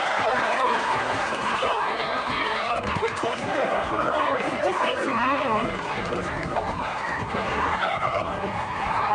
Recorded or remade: remade